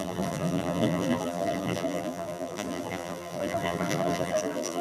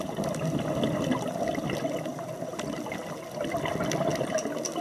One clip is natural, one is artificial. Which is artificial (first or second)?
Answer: first